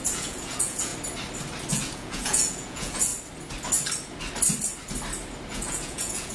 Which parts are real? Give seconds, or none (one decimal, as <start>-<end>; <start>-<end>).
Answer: 0.9-1.7; 3.1-5.5